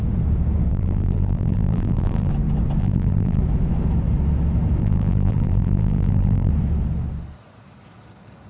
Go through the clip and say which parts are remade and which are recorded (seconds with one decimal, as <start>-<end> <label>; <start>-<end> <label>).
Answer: 0.0-0.7 recorded; 0.7-2.3 remade; 2.3-2.8 recorded; 2.8-3.4 remade; 3.4-4.8 recorded; 4.8-6.5 remade; 6.5-8.5 recorded